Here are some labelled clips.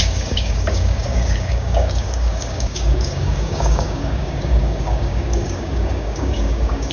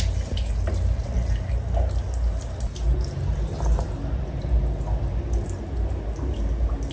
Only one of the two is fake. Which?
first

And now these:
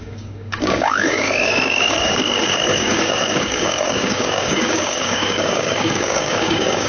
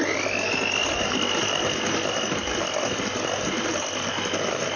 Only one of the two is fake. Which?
first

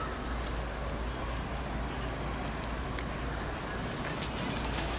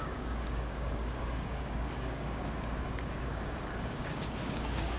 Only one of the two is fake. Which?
second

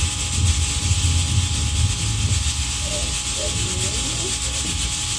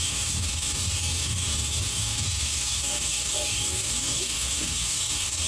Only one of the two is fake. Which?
second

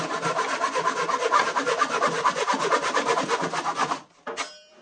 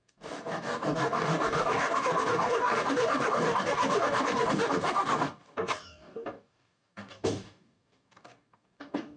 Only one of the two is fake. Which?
second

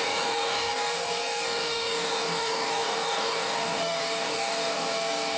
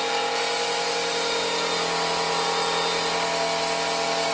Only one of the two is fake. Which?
first